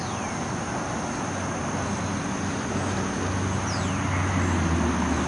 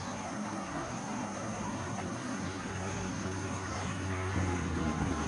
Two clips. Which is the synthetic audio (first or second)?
second